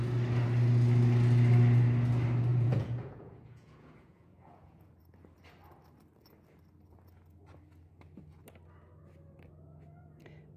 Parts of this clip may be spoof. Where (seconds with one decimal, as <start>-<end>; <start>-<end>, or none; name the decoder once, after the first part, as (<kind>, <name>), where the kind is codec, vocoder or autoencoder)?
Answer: 2.5-5.0 (vocoder, Vocos)